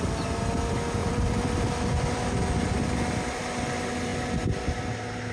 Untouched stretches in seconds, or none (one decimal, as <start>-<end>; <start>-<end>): 0.0-1.0; 3.4-5.3